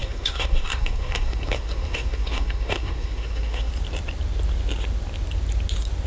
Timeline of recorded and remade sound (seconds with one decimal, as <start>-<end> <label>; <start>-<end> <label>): 0.0-3.7 remade; 3.7-6.1 recorded